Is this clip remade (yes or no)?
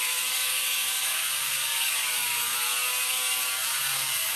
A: yes